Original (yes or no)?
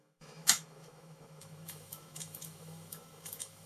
no